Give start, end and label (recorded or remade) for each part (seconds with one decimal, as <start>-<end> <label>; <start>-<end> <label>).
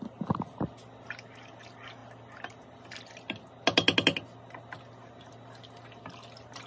0.0-6.7 recorded